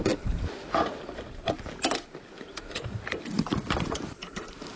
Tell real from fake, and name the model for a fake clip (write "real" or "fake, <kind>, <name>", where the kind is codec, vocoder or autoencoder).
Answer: fake, vocoder, BigVGAN v2